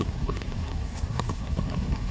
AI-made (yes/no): yes